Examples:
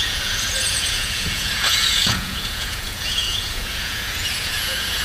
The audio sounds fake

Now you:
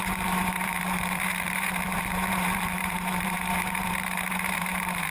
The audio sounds fake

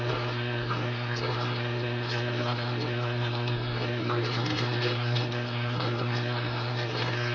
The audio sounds fake